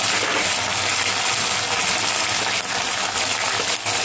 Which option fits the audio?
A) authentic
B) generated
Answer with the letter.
A